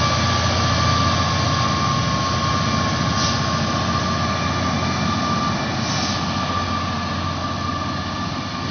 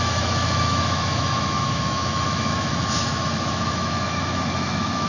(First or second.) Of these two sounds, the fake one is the second